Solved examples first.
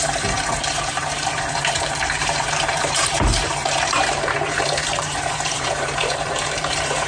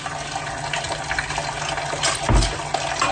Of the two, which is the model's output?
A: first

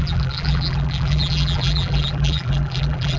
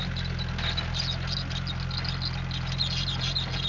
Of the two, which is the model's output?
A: first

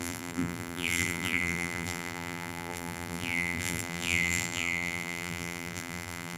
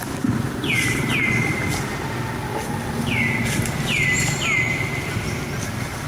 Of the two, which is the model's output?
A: first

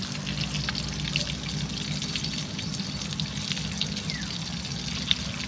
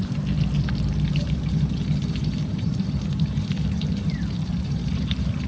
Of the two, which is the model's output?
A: second